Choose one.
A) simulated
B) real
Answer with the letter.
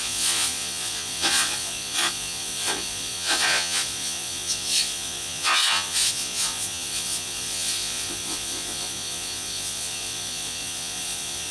A